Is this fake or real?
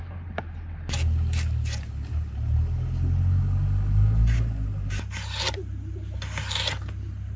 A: real